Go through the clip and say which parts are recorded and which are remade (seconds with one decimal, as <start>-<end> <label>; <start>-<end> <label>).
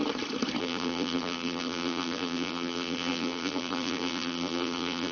0.0-0.6 recorded; 0.6-5.1 remade